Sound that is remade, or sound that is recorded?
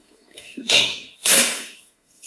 remade